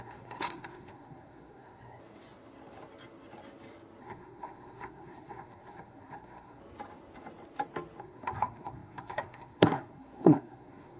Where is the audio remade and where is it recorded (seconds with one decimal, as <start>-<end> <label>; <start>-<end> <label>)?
0.0-2.0 remade; 2.0-4.0 recorded; 4.0-6.6 remade; 6.6-8.0 recorded; 8.0-11.0 remade